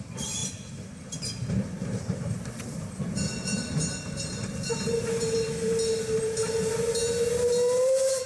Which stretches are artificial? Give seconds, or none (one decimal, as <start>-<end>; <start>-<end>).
0.4-3.0